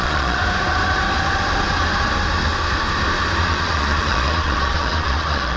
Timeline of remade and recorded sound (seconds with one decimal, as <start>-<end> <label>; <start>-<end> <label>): 0.0-0.4 remade; 0.4-3.4 recorded; 3.4-5.6 remade